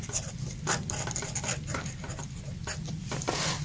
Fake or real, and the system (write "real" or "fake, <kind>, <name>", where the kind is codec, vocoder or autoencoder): real